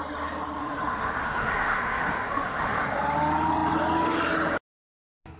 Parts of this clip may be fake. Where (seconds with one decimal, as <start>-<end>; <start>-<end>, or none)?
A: 0.6-3.0